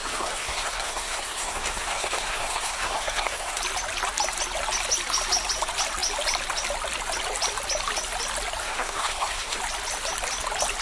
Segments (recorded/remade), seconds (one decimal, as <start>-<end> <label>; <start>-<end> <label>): 0.0-3.6 remade; 3.6-8.6 recorded; 8.6-9.6 remade; 9.6-10.8 recorded